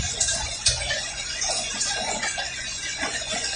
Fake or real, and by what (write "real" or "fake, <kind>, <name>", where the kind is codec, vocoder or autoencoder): fake, vocoder, Vocos